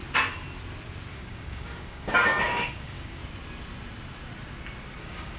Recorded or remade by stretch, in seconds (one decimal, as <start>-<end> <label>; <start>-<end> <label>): 0.0-1.1 recorded; 1.1-3.2 remade; 3.2-5.0 recorded; 5.0-5.4 remade